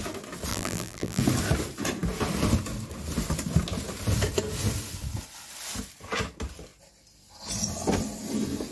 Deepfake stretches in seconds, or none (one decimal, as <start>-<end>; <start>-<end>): 0.5-1.2